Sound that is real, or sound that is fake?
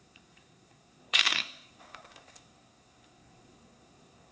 fake